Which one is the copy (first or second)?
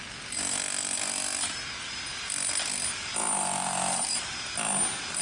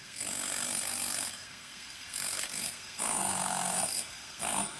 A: second